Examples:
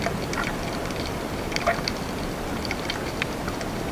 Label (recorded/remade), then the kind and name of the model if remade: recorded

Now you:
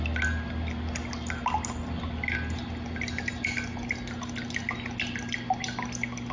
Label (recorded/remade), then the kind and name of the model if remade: recorded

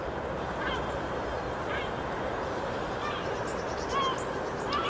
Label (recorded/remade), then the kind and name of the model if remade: remade, vocoder, BigVGAN v2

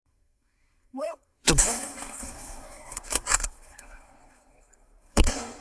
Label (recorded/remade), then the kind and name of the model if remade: remade, codec, SNAC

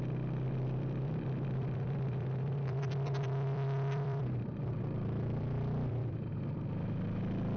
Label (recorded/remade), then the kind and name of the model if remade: remade, vocoder, BigVGAN v2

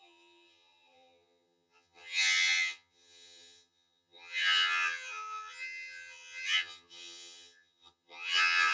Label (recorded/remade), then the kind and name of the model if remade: remade, vocoder, HiFi-GAN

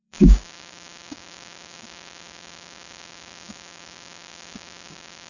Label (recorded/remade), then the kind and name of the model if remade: remade, codec, DAC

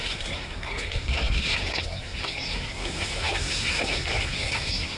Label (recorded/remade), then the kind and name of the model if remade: remade, codec, SNAC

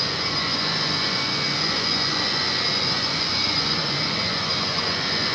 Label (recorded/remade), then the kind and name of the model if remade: remade, vocoder, Vocos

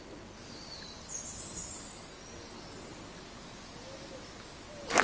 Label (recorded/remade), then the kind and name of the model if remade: recorded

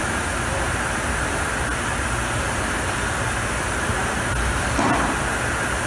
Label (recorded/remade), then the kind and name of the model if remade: recorded